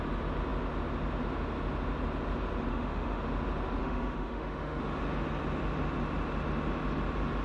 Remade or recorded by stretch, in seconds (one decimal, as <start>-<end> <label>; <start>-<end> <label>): 0.0-2.7 recorded; 2.7-3.2 remade; 3.2-3.8 recorded; 3.8-4.8 remade; 4.8-7.4 recorded